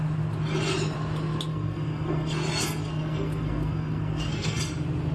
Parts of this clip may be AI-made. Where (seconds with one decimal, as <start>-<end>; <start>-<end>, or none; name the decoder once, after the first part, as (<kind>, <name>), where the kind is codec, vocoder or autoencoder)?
1.5-4.6 (codec, SNAC)